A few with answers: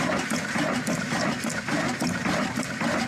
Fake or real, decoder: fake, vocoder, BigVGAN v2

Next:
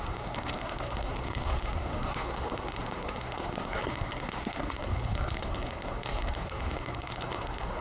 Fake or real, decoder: fake, codec, SNAC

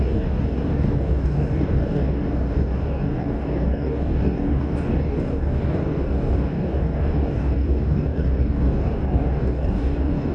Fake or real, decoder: fake, codec, DAC